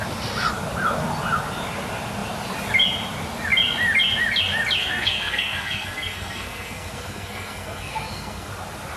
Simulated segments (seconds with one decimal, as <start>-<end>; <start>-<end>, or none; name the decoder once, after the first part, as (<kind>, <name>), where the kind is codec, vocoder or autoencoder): 4.8-8.5 (codec, SNAC)